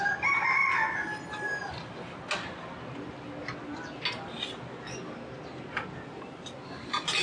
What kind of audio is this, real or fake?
real